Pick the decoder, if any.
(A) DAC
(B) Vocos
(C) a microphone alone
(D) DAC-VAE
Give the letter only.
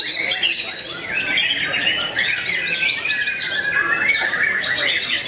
C